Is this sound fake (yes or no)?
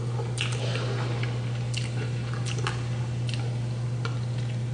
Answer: no